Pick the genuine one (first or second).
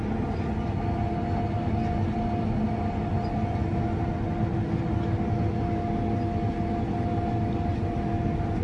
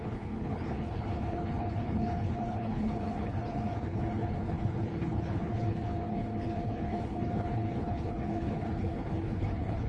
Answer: first